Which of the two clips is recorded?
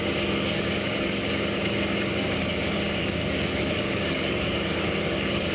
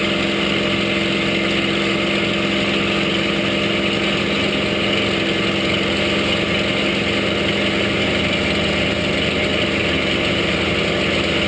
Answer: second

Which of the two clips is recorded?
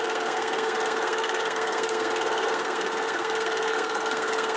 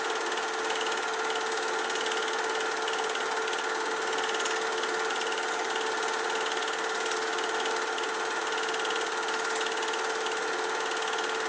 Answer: second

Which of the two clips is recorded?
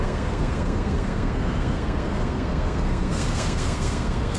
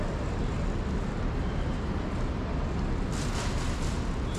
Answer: second